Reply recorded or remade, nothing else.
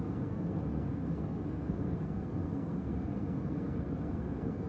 remade